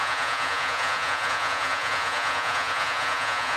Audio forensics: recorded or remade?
remade